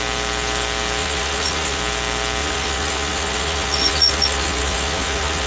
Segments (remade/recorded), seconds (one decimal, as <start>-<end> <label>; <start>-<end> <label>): 0.0-1.0 recorded; 1.0-1.8 remade; 1.8-2.4 recorded; 2.4-5.5 remade